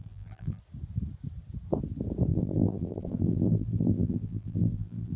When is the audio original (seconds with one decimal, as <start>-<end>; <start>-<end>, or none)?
0.6-2.3